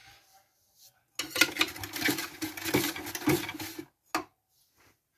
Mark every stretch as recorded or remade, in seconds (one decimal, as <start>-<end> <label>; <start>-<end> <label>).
0.0-5.2 recorded

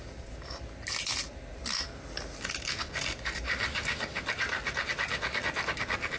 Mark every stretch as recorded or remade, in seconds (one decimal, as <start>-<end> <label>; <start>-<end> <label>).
0.0-6.2 recorded

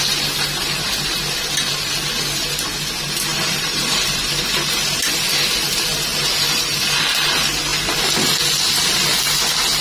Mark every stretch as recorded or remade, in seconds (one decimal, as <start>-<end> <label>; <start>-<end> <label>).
0.0-3.3 recorded; 3.3-4.4 remade; 4.4-9.8 recorded

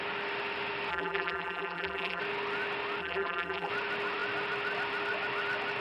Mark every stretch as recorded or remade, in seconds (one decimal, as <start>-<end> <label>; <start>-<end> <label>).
0.0-0.9 recorded; 0.9-2.2 remade; 2.2-3.0 recorded; 3.0-3.7 remade; 3.7-5.8 recorded

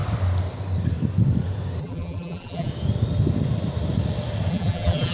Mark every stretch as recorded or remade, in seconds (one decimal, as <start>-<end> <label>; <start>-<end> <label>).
0.0-1.8 recorded; 1.8-2.7 remade; 2.7-4.5 recorded; 4.5-5.1 remade